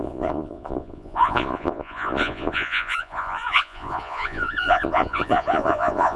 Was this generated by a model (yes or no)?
yes